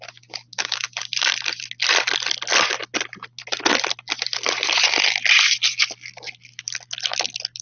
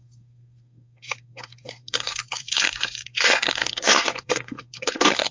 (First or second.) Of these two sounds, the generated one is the second